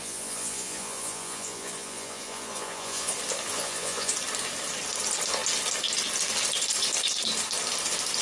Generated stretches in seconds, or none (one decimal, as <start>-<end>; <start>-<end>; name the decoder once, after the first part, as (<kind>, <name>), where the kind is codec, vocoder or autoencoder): 0.0-3.1 (vocoder, Vocos); 3.5-4.1